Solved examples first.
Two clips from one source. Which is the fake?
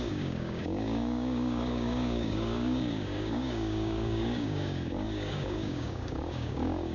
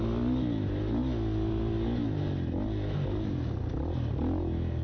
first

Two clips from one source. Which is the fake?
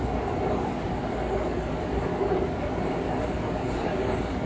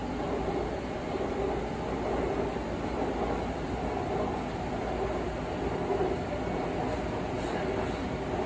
first